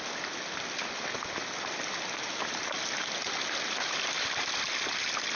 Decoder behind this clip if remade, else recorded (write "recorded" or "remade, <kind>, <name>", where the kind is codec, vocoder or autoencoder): recorded